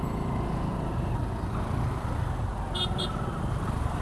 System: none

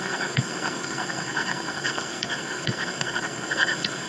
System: codec, SNAC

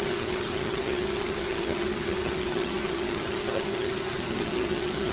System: vocoder, HiFi-GAN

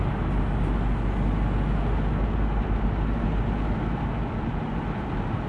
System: none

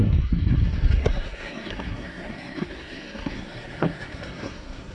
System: codec, SNAC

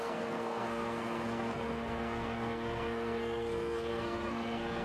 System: codec, SNAC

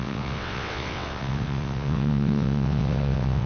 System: vocoder, WaveNeXt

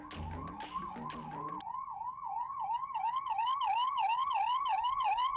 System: none